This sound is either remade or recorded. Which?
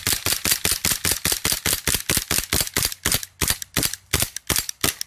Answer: recorded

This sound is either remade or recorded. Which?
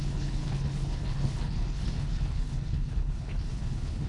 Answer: remade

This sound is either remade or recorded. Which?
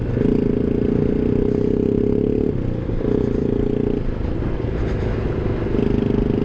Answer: recorded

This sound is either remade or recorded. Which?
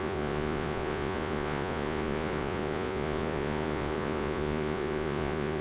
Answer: remade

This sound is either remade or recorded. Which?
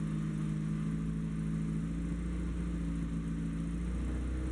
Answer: recorded